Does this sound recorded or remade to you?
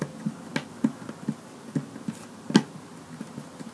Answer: recorded